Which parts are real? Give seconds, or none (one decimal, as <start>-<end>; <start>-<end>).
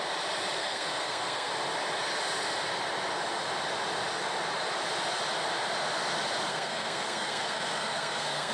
0.0-0.6; 1.5-6.5